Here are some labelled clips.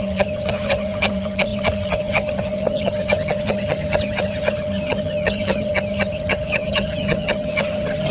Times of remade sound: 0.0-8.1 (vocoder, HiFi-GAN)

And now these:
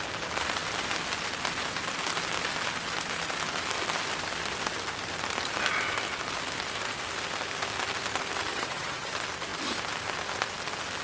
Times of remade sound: 8.5-9.1 (vocoder, HiFi-GAN)

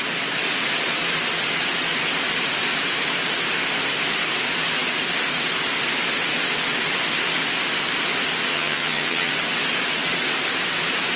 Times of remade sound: 8.5-9.3 (vocoder, HiFi-GAN)

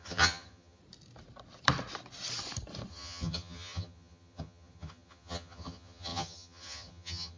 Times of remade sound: 0.0-0.8 (vocoder, HiFi-GAN); 2.9-7.4

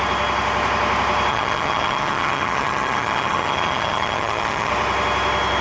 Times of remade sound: 1.3-4.7 (vocoder, HiFi-GAN)